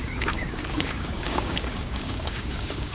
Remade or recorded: remade